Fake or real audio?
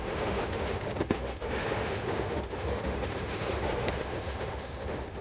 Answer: fake